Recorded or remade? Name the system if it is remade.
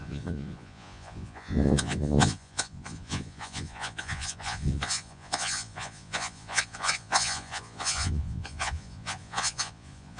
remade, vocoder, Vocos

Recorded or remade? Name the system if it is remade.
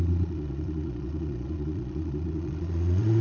remade, vocoder, Vocos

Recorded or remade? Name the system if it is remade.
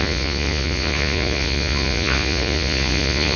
remade, vocoder, Vocos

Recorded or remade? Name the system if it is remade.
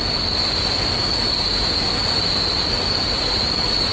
recorded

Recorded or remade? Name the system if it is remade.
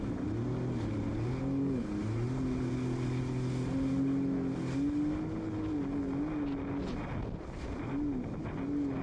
recorded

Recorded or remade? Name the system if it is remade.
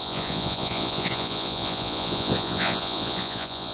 remade, vocoder, Vocos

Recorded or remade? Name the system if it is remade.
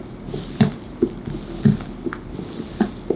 recorded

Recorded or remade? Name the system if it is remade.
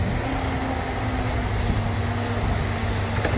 recorded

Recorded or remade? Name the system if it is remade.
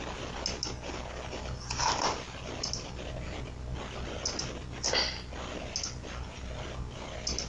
recorded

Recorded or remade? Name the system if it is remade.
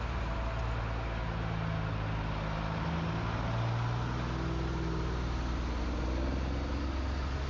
recorded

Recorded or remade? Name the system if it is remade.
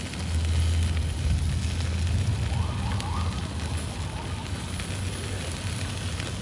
recorded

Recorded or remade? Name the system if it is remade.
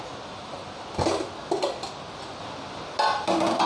recorded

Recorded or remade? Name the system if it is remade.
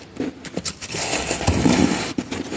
recorded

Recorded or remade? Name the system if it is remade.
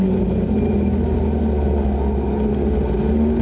recorded